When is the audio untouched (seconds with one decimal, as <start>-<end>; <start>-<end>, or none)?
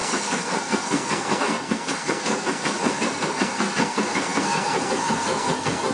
none